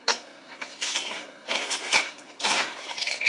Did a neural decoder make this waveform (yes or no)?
yes